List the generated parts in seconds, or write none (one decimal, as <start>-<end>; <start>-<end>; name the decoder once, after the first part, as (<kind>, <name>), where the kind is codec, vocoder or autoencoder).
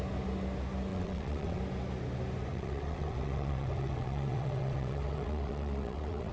0.9-1.6 (vocoder, WaveNeXt); 2.5-6.3